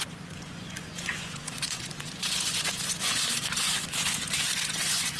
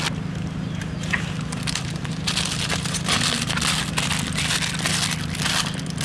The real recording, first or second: second